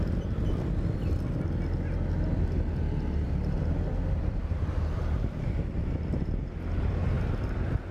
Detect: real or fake real